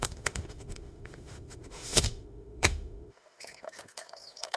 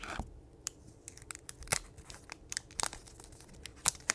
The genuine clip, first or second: second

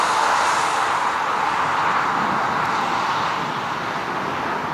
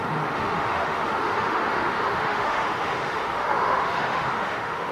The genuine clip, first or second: first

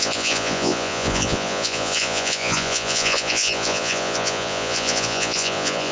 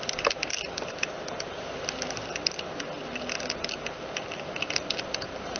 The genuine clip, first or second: second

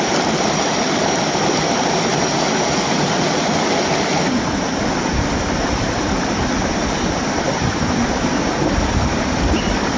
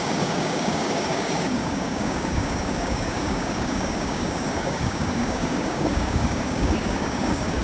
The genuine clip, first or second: first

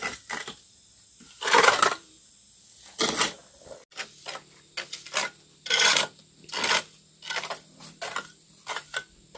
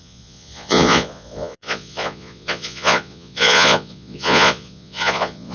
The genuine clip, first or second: first